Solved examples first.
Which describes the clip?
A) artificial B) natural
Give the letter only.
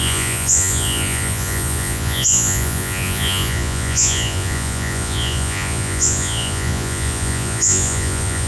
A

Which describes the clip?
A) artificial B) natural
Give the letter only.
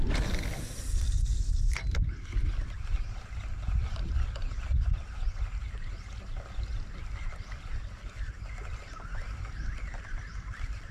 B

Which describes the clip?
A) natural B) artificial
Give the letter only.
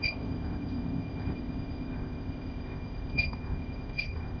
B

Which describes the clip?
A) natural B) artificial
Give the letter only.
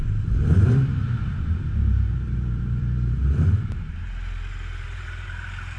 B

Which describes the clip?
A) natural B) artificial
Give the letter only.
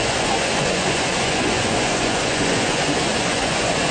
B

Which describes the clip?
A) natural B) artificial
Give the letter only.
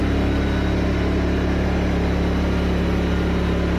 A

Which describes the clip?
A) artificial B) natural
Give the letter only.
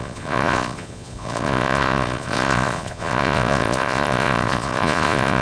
A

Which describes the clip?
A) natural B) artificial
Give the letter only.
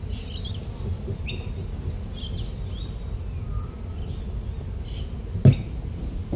A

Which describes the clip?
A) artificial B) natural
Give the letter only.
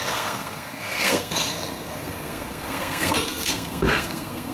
A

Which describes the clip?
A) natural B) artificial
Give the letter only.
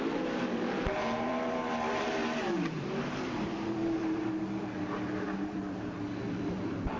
B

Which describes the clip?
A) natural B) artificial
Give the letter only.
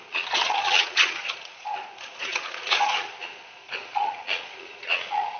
B